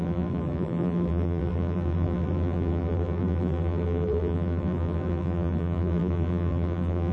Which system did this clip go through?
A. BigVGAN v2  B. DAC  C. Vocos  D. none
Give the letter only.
A